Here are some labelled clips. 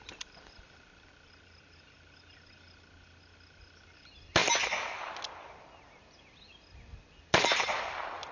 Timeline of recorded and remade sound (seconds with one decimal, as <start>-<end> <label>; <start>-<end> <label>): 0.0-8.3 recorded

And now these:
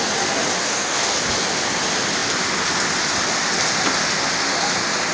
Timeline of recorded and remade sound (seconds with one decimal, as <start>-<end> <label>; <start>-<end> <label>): 0.0-0.6 recorded; 0.6-1.2 remade; 1.2-5.1 recorded

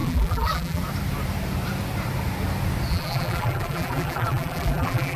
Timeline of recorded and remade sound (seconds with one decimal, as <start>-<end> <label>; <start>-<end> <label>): 0.0-0.8 remade; 0.8-2.9 recorded; 2.9-5.2 remade